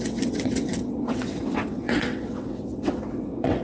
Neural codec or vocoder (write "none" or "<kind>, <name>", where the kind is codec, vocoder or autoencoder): vocoder, WaveNeXt